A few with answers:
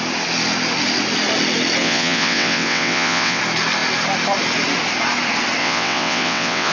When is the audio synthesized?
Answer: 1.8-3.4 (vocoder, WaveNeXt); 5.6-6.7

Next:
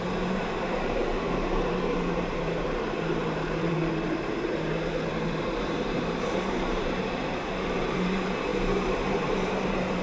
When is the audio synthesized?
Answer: 0.0-10.0 (vocoder, BigVGAN v2)

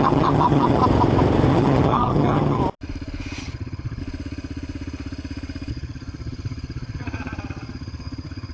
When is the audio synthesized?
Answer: 0.0-0.8 (vocoder, HiFi-GAN); 1.5-2.6; 3.4-4.0; 5.7-8.5

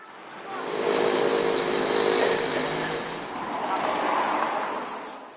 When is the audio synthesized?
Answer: none

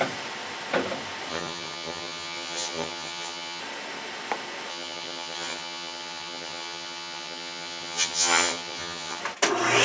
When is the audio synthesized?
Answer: 1.3-3.6 (vocoder, HiFi-GAN); 4.7-9.2

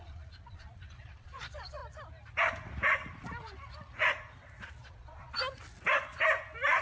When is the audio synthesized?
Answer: 0.0-1.8 (vocoder, Vocos); 4.8-5.4

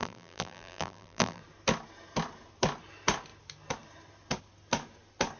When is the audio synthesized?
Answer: 0.0-1.4 (vocoder, BigVGAN v2)

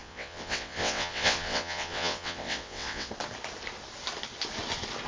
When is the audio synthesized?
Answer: 0.0-3.1 (vocoder, WaveNeXt)